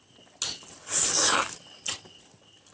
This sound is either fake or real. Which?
real